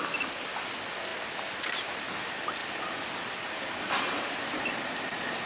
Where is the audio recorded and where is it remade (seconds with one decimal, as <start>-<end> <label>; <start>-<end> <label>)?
0.0-5.5 recorded